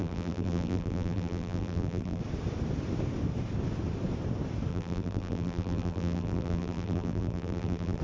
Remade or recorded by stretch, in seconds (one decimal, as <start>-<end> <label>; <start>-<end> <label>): 0.0-2.2 remade; 2.2-4.7 recorded; 4.7-8.0 remade